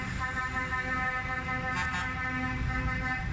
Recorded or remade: recorded